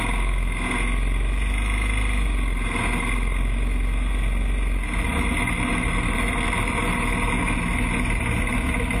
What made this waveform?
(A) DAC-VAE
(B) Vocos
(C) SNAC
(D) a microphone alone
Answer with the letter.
D